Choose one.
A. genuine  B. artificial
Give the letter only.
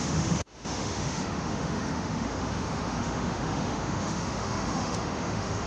B